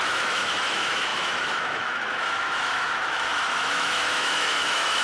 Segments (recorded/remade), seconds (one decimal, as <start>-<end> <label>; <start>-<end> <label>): 0.0-5.0 remade

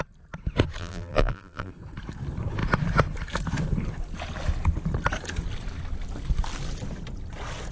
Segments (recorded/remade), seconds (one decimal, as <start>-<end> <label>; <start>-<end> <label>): 0.0-0.8 recorded; 0.8-1.7 remade; 1.7-7.7 recorded

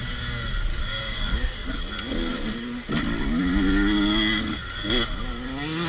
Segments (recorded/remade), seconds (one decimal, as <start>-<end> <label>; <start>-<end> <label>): 0.0-0.7 recorded; 0.7-1.8 remade; 1.8-5.9 recorded

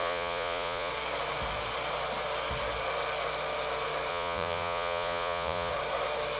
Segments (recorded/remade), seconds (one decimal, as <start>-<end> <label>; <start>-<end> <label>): 0.0-0.9 remade; 0.9-4.1 recorded; 4.1-5.7 remade; 5.7-6.4 recorded

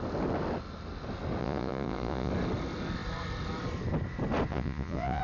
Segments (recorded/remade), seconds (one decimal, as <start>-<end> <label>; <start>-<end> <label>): 0.0-1.4 recorded; 1.4-2.3 remade; 2.3-4.5 recorded; 4.5-5.2 remade